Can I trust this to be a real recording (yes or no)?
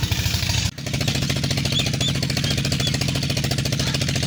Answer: yes